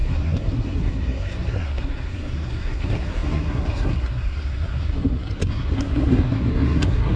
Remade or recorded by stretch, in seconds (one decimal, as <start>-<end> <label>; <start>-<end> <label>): 0.0-7.2 remade